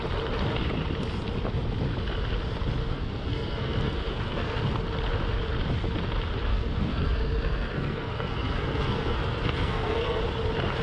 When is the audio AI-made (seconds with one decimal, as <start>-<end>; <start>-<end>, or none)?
2.8-4.6; 6.5-10.2